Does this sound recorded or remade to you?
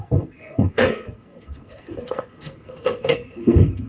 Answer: remade